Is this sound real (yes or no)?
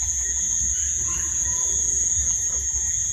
yes